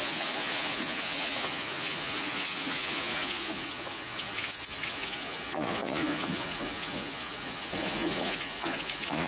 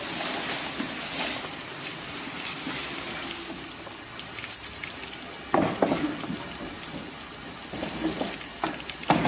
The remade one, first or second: first